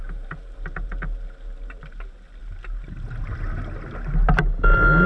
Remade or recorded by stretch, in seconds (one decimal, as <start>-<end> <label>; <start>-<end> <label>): 0.0-5.1 recorded